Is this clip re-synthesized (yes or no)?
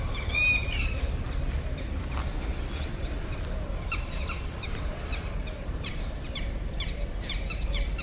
yes